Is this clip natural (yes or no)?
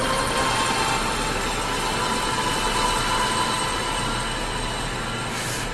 yes